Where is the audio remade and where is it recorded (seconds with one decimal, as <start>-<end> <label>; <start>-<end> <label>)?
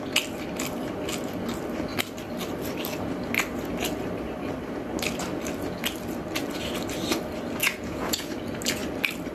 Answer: 0.0-7.6 recorded; 7.6-8.3 remade; 8.3-9.3 recorded